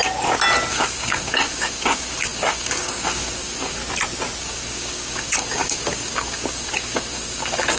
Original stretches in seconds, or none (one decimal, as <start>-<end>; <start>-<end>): 0.0-0.7; 3.8-4.4

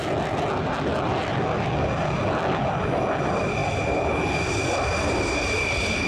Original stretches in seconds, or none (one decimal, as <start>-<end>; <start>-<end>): 0.5-6.1

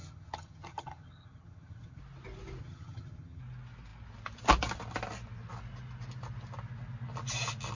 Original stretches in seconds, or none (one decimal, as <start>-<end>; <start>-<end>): 2.0-2.6; 3.4-7.8

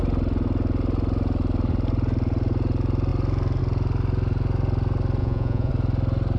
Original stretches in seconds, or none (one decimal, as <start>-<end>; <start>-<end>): 0.0-5.2; 5.7-6.4

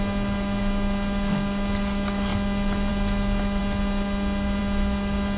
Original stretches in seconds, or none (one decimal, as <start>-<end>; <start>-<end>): 0.0-5.4

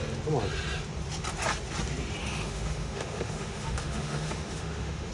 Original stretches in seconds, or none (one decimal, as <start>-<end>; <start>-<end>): 0.0-2.2